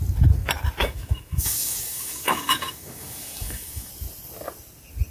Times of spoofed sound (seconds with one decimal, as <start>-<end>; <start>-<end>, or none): 0.8-3.9